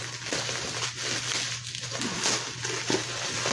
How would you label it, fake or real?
real